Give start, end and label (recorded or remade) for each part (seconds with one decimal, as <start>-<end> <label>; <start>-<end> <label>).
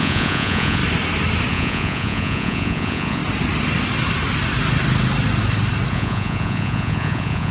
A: 0.0-0.8 remade; 0.8-1.5 recorded; 1.5-3.2 remade; 3.2-5.9 recorded; 5.9-7.5 remade